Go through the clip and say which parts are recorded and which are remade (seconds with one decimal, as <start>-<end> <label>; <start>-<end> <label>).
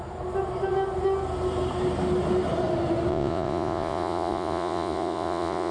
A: 0.0-3.1 recorded; 3.1-5.7 remade